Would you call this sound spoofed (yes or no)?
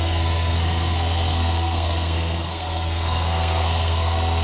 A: yes